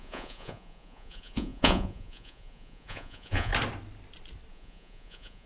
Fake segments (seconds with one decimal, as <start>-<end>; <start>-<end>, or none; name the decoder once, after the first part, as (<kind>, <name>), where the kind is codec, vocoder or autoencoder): 0.0-3.5 (vocoder, Vocos); 4.5-5.5